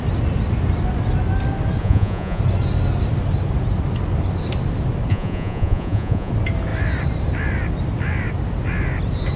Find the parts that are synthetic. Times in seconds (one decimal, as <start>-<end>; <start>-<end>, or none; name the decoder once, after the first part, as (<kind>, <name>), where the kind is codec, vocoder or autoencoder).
1.8-2.4 (vocoder, Vocos); 5.1-6.3